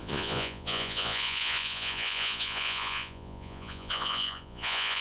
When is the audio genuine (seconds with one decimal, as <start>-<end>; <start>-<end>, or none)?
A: none